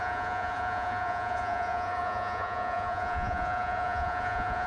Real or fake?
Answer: fake